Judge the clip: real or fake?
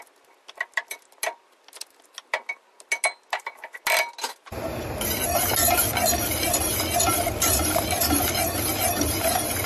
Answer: real